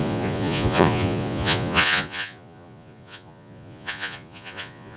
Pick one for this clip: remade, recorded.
remade